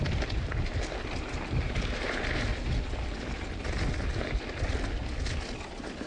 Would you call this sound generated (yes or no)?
no